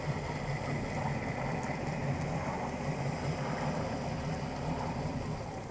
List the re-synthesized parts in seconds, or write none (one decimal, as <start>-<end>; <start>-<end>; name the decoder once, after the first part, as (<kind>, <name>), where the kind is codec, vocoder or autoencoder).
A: none